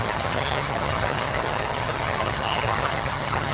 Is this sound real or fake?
fake